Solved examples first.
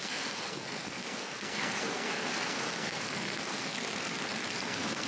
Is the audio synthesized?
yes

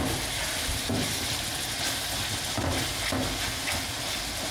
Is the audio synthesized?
no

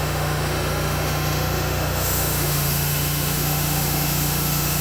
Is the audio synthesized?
yes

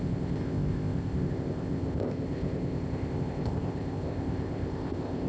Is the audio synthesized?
yes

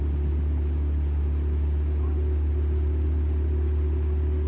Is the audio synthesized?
no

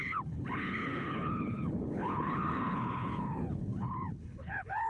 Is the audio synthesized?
yes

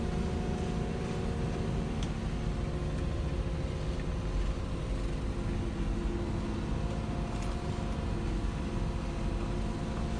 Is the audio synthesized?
no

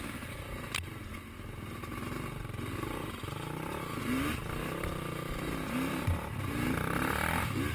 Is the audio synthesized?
no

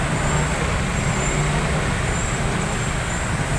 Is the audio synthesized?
no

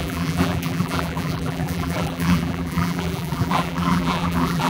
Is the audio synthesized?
yes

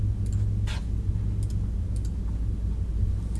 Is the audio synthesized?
no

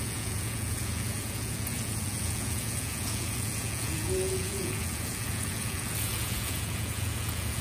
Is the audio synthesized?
yes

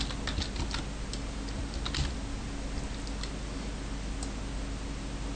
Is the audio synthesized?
no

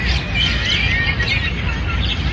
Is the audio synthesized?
no